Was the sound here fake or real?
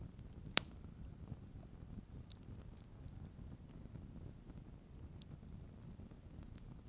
real